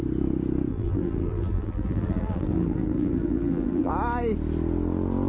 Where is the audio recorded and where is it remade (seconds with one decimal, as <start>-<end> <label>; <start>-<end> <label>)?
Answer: 0.0-0.7 recorded; 0.7-3.9 remade; 3.9-5.3 recorded